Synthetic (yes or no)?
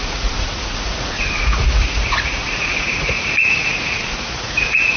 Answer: yes